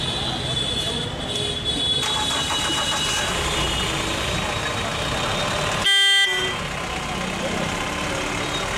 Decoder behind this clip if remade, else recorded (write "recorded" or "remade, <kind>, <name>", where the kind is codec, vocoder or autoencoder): recorded